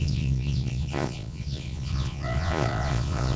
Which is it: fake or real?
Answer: fake